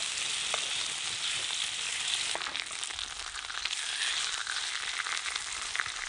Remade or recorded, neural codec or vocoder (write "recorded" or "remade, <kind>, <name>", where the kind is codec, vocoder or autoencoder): recorded